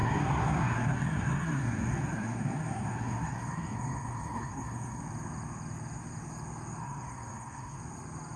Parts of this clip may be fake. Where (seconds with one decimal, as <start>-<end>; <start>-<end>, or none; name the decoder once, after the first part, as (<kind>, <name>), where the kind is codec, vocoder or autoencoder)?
0.0-5.0 (codec, SNAC); 6.8-7.8